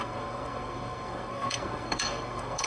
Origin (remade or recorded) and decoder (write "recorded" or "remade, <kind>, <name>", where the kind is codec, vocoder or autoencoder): remade, codec, SNAC